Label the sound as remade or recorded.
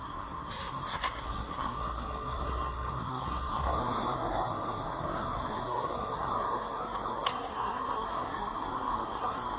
remade